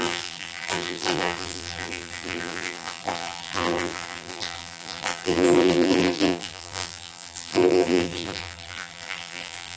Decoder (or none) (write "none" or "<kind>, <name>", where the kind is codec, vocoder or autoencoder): vocoder, BigVGAN v2